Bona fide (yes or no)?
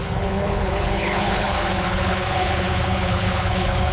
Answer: no